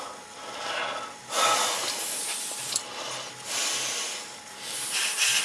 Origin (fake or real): real